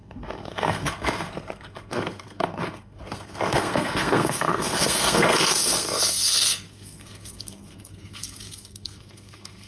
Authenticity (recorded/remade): remade